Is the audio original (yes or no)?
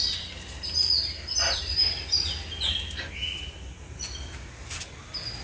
yes